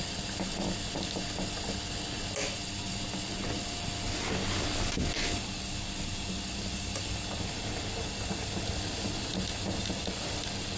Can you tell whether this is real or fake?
real